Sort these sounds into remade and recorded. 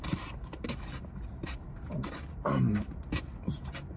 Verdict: remade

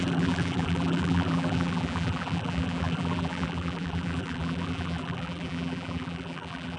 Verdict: remade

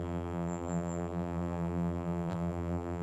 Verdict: remade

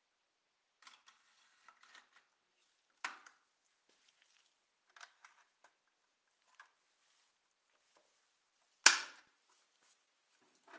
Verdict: recorded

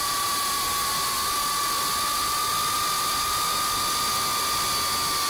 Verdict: recorded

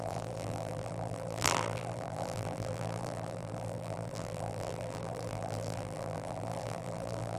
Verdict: remade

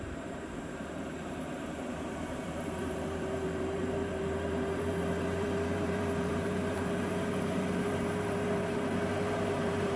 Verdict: remade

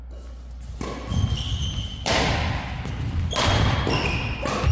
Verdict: recorded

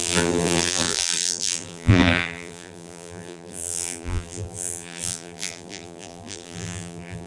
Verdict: remade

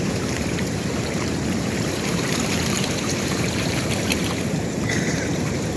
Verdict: remade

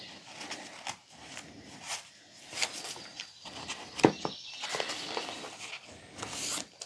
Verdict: recorded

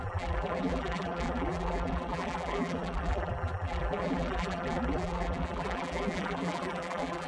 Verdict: remade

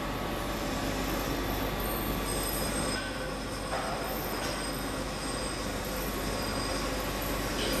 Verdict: recorded